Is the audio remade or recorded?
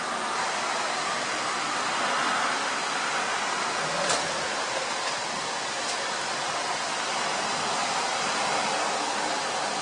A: recorded